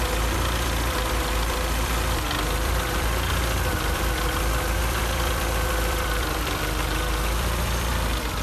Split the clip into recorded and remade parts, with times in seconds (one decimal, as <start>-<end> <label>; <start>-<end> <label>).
0.0-8.4 remade